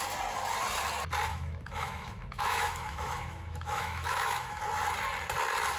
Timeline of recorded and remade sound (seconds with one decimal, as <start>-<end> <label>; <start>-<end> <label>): 0.0-1.3 recorded; 1.3-4.6 remade; 4.6-5.8 recorded